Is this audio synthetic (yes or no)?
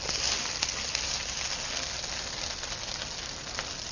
no